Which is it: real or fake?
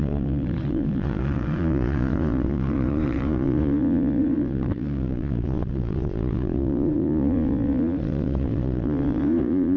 fake